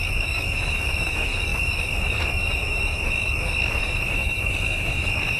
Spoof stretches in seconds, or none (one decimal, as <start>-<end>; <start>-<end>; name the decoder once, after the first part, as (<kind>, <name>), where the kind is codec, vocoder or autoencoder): 0.0-5.4 (codec, DAC)